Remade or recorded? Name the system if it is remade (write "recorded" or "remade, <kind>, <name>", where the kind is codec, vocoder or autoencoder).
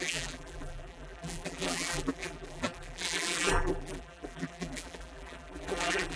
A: remade, vocoder, BigVGAN v2